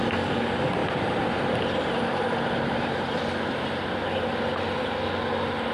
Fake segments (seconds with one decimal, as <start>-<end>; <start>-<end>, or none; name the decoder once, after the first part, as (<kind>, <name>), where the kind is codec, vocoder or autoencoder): 0.8-3.2 (vocoder, BigVGAN v2)